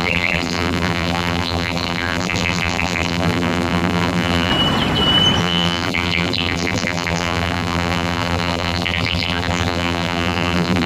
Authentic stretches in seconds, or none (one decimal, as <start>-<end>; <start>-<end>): 4.5-5.4